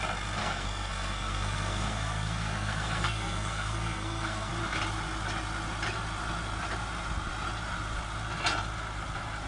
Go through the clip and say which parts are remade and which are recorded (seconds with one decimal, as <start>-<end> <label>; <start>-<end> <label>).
0.0-0.4 recorded; 0.4-4.5 remade; 4.5-9.5 recorded